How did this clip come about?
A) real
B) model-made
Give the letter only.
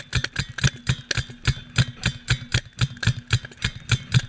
A